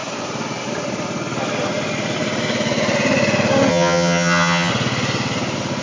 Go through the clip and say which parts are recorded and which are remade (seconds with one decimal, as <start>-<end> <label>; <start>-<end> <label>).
0.0-3.7 recorded; 3.7-4.7 remade; 4.7-5.8 recorded